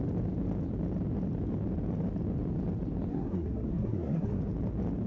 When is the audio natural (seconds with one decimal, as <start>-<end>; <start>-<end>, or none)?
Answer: 0.0-3.1; 4.4-5.1